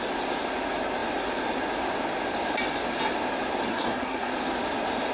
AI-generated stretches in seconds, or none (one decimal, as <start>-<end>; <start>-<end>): 3.7-4.3